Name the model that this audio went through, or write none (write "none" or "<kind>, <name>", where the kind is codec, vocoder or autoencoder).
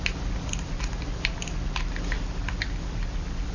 none